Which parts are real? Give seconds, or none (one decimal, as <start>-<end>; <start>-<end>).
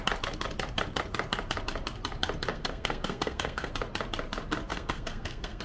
0.0-2.5; 3.7-4.7